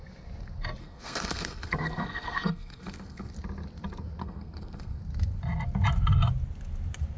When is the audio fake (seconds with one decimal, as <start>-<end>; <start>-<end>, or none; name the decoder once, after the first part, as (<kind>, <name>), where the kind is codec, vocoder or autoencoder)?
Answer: 0.8-3.3 (codec, SNAC); 4.2-5.0